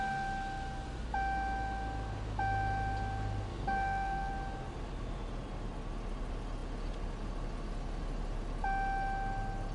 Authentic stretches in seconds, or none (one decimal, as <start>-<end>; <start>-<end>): 0.0-3.5; 4.3-9.7